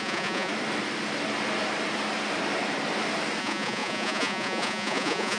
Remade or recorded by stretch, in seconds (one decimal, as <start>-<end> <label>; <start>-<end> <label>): 0.0-0.5 remade; 0.5-3.4 recorded; 3.4-5.4 remade